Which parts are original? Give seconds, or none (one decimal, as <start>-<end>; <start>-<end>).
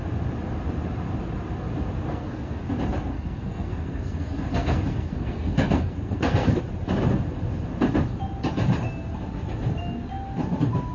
0.0-2.1; 2.6-3.1; 6.6-10.9